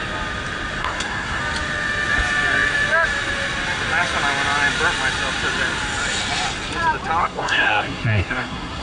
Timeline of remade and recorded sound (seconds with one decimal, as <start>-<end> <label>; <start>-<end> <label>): 0.0-0.8 recorded; 0.8-1.4 remade; 1.4-7.2 recorded; 7.2-8.8 remade